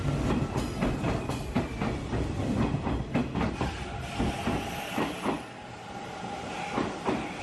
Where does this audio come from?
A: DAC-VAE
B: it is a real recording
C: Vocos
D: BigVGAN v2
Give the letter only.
B